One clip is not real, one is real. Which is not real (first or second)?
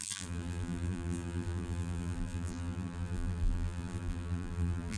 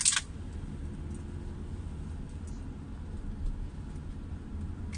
first